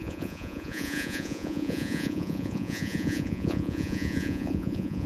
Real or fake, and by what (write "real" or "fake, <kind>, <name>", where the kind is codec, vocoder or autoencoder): fake, vocoder, Vocos